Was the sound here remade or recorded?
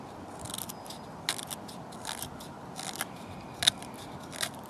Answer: recorded